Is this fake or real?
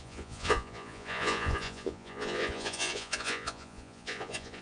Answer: fake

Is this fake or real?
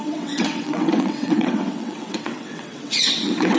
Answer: fake